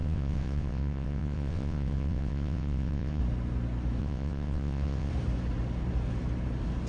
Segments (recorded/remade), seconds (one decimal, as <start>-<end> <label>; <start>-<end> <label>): 0.0-3.2 remade; 3.2-4.0 recorded; 4.0-5.1 remade; 5.1-6.9 recorded